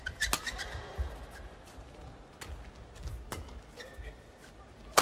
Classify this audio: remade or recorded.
recorded